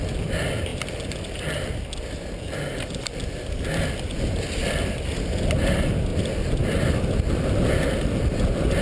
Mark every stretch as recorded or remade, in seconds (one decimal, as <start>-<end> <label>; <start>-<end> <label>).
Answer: 0.0-8.8 recorded